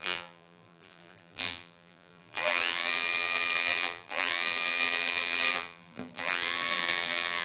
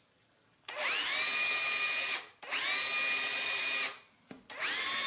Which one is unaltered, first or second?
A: second